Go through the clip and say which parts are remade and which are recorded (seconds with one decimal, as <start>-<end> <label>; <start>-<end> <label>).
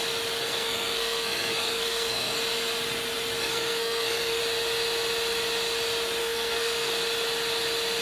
0.0-0.4 recorded; 0.4-2.4 remade; 2.4-3.4 recorded; 3.4-4.4 remade; 4.4-6.2 recorded; 6.2-6.9 remade; 6.9-8.0 recorded